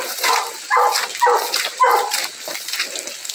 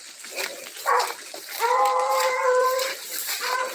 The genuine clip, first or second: first